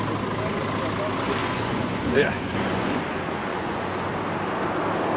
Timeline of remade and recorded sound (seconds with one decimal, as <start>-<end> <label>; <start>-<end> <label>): 0.0-1.4 recorded; 1.4-3.0 remade; 3.0-3.4 recorded; 3.4-4.1 remade; 4.1-5.2 recorded